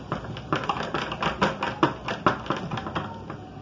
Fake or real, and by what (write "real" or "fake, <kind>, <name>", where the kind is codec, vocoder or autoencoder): real